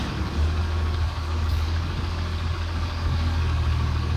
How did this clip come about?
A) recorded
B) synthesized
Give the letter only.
B